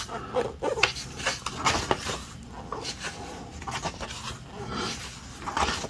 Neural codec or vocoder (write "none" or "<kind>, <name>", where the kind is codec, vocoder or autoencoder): none